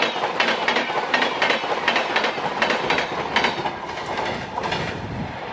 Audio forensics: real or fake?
real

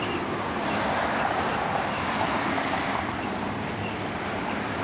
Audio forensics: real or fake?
real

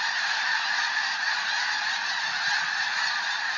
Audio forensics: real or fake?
fake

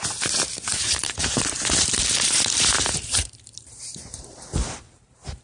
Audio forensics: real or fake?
fake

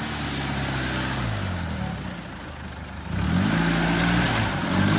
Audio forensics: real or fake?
real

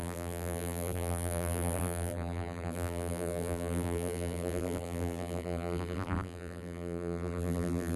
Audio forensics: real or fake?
fake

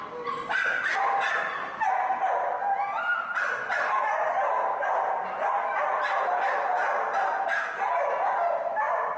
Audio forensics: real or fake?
real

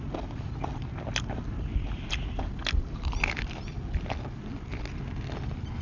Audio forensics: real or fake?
real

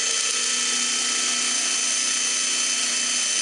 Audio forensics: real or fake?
real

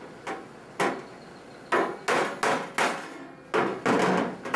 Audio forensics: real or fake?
real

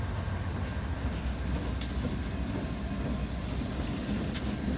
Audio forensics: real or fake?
real